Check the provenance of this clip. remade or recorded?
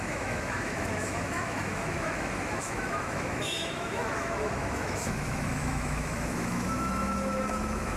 remade